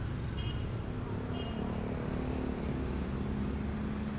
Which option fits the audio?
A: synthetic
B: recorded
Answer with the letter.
B